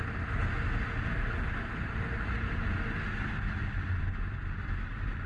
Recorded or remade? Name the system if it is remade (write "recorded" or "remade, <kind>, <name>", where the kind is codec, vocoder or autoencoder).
recorded